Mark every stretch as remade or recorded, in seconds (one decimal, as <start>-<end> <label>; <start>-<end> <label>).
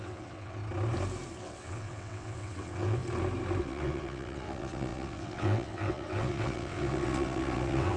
0.0-0.6 remade; 0.6-1.4 recorded; 1.4-3.0 remade; 3.0-3.6 recorded; 3.6-8.0 remade